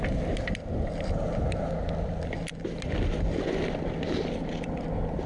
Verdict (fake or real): real